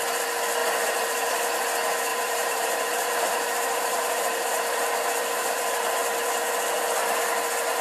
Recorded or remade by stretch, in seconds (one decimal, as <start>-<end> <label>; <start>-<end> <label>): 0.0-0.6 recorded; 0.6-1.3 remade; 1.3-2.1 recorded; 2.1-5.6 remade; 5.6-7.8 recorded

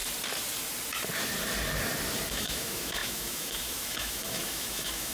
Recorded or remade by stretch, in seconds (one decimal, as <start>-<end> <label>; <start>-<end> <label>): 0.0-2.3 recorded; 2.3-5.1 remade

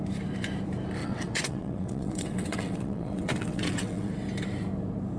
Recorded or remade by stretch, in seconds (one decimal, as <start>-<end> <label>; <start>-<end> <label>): 0.0-1.0 recorded; 1.0-4.1 remade; 4.1-5.2 recorded